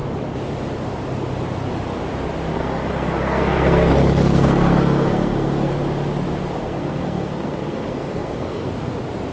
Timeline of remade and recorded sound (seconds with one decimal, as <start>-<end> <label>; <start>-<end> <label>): 0.0-2.5 recorded; 2.5-5.7 remade; 5.7-6.6 recorded; 6.6-8.7 remade; 8.7-9.3 recorded